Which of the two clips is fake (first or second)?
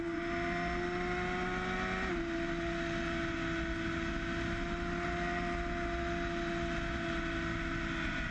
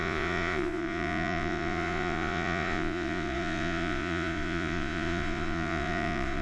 second